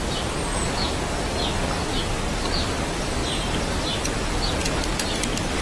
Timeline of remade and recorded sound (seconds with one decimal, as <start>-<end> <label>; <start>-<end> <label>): 0.0-5.6 recorded